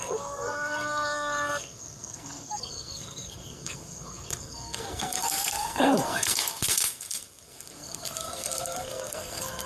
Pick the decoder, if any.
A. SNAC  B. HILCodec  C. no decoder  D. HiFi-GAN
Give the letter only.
A